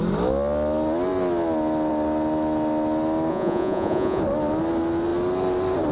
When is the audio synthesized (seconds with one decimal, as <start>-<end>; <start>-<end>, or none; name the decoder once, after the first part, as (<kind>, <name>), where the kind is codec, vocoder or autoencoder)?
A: 3.3-4.2 (vocoder, Vocos)